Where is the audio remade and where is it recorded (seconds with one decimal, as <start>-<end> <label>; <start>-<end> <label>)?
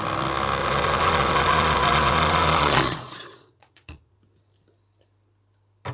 0.0-0.6 recorded; 0.6-4.1 remade; 4.1-5.9 recorded